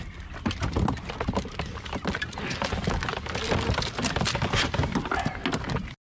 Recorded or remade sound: recorded